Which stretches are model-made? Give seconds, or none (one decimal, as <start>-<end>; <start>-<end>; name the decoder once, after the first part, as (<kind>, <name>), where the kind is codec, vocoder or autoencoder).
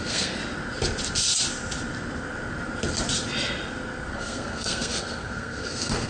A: 0.0-0.4 (codec, SNAC); 4.1-6.1